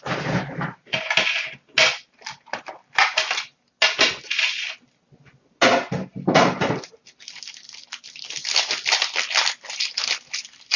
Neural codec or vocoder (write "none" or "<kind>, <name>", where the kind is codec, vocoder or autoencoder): none